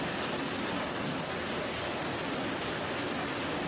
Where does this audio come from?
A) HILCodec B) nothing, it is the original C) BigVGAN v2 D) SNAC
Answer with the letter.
B